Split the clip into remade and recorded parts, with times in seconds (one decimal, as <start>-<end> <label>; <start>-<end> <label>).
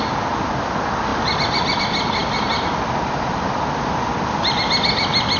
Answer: 0.0-5.4 recorded